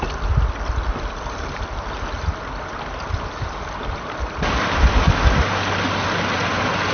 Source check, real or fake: real